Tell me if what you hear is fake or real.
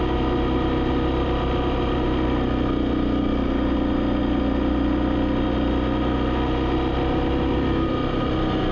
real